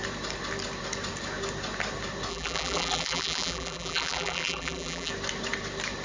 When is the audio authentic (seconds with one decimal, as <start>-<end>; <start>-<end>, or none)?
0.0-2.3; 5.1-6.0